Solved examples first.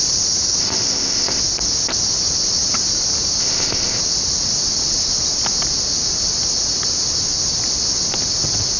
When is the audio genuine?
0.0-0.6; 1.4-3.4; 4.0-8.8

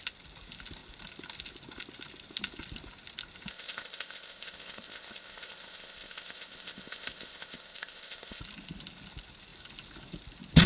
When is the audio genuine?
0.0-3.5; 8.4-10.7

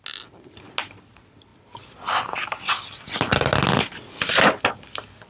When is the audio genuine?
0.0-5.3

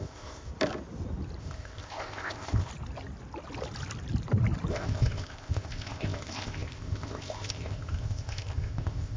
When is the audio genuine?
0.5-1.4; 2.7-4.7

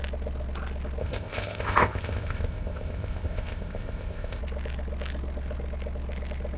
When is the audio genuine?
0.0-1.0; 4.4-6.6

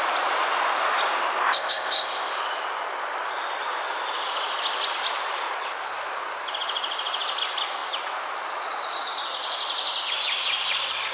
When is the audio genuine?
0.0-1.4; 2.3-11.1

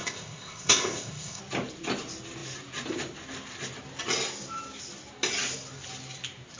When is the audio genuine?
1.4-6.6

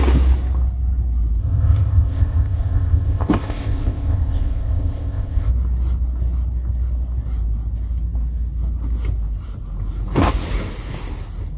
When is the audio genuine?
0.0-1.4; 5.5-11.6